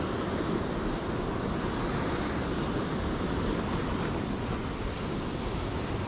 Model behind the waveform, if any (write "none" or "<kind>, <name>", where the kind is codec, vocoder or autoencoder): none